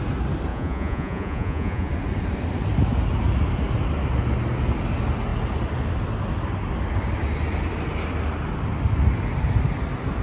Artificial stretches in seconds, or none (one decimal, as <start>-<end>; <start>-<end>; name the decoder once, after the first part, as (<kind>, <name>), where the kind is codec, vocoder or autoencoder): 0.5-1.9 (vocoder, Vocos)

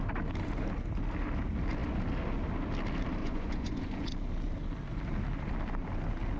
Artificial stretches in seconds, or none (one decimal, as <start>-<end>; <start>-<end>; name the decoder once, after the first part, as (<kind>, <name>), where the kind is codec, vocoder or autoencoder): 3.2-4.1 (vocoder, Vocos)